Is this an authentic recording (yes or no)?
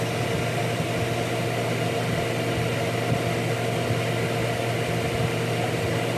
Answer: yes